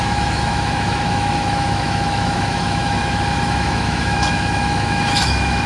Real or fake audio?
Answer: fake